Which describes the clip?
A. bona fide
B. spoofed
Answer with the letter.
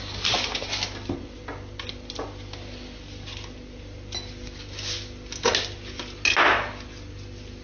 A